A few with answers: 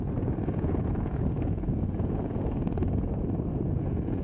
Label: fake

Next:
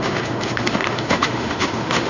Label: fake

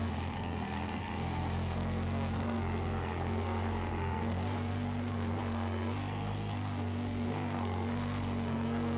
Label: fake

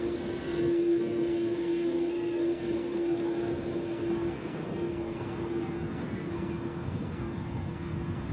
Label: fake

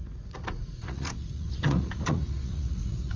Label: fake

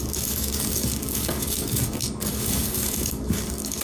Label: fake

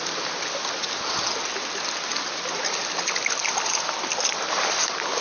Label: real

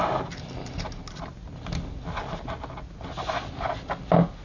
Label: real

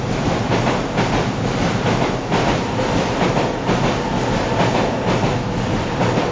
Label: real